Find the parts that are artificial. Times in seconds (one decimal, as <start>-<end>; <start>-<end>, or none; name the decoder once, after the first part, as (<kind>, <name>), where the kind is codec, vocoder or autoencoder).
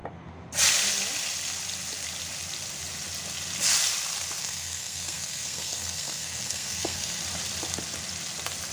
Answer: 4.4-7.2 (codec, SNAC)